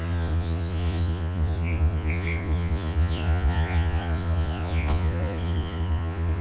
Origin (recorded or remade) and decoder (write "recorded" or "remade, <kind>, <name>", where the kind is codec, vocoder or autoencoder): remade, vocoder, Vocos